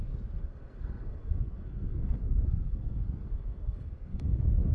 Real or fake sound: fake